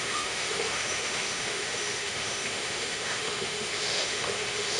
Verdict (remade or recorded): remade